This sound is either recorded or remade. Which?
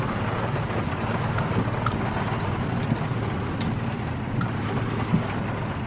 recorded